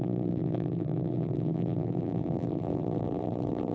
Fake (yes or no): yes